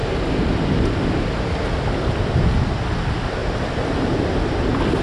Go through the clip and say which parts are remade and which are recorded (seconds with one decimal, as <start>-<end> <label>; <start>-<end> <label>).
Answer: 0.0-5.0 recorded